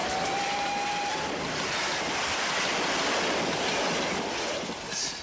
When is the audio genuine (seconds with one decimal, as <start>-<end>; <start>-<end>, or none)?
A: 1.7-5.2